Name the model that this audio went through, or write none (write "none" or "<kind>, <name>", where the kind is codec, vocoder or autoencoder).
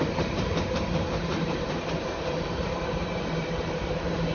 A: vocoder, BigVGAN v2